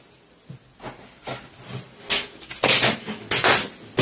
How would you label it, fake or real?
real